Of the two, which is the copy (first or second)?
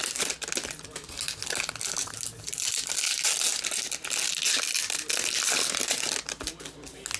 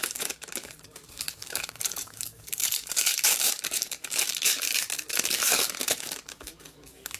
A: second